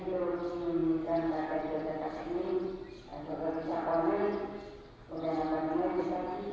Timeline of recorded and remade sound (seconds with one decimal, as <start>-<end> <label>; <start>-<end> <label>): 0.0-6.5 recorded